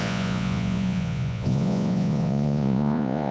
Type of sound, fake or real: fake